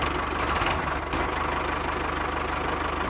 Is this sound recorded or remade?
recorded